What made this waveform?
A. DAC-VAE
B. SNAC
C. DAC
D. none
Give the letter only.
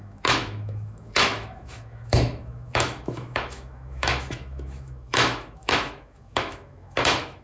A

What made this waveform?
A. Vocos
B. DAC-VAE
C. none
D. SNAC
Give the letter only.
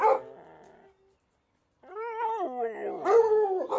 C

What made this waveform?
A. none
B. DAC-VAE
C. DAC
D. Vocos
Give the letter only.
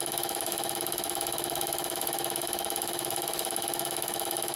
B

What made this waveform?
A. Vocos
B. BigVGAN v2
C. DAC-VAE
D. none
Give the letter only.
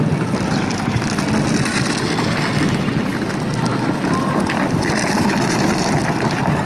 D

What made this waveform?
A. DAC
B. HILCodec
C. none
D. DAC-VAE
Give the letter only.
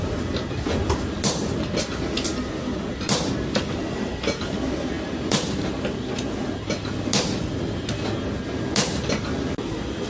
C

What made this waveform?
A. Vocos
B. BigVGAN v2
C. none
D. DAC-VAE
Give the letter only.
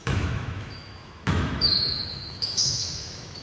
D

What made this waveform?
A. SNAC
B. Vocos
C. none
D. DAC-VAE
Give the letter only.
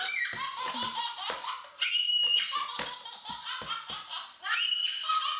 C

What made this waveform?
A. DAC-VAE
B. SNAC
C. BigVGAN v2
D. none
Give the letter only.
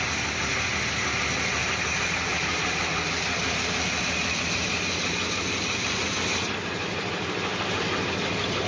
D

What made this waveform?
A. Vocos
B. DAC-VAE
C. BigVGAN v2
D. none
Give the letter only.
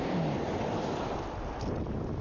D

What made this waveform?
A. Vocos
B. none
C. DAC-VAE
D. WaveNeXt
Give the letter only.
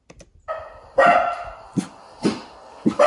B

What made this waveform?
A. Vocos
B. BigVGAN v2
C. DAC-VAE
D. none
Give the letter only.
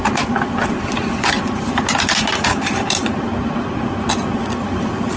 D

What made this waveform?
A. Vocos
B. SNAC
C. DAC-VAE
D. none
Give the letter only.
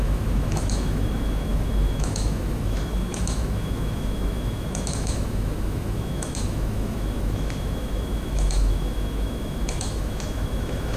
C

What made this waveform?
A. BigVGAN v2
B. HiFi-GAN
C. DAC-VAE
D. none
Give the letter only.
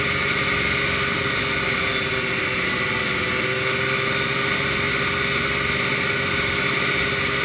D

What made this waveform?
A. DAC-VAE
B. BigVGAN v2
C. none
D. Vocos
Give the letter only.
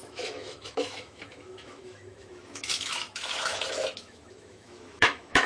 A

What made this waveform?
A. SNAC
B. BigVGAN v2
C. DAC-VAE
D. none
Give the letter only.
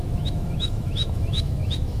C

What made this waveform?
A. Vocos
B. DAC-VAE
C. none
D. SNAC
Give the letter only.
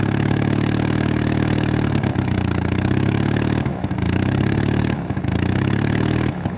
B